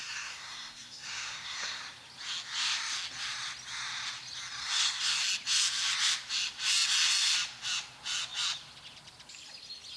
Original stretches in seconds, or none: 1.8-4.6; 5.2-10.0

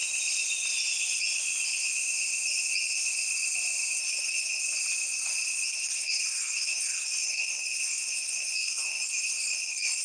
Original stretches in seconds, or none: 0.0-4.0; 4.6-5.7

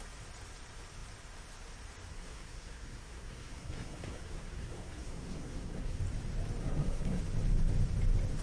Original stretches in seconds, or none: 0.0-2.1; 6.0-6.6; 7.2-8.4

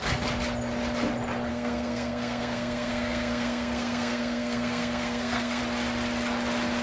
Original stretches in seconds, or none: 0.0-1.5; 5.6-6.8

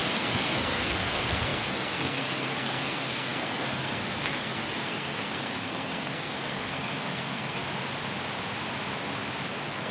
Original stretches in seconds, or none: 7.6-9.5

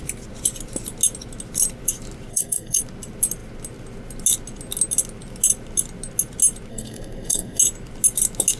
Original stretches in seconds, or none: 0.0-2.3; 2.8-6.7; 7.6-8.6

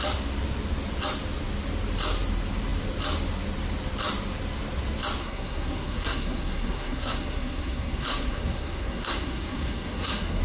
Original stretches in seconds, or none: 0.0-5.2